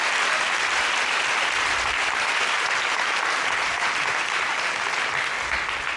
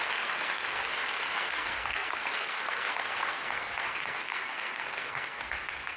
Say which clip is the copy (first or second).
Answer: second